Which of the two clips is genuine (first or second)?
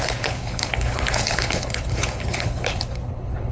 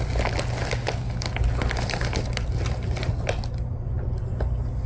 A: second